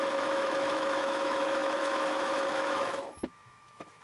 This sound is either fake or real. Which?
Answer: fake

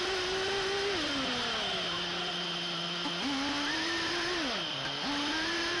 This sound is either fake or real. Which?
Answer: real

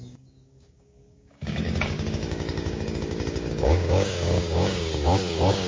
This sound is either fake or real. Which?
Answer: fake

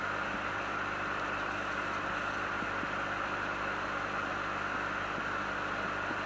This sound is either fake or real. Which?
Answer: real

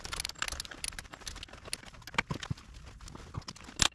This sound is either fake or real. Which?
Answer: real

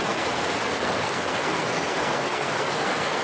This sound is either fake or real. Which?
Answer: fake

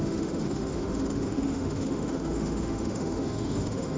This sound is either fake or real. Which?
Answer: fake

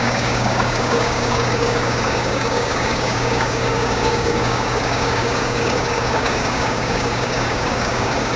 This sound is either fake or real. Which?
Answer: fake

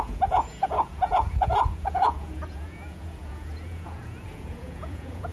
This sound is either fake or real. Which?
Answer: fake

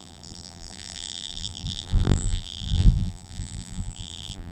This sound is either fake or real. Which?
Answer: fake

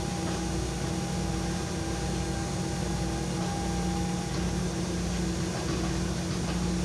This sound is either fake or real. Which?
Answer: real